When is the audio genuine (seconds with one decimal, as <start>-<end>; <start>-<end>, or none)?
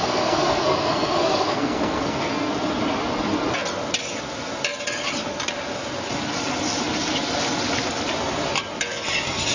2.5-9.5